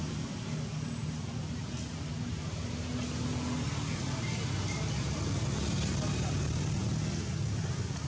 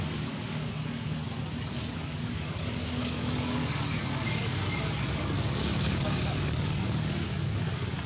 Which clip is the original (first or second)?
first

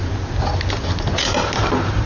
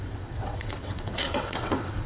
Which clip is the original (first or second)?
first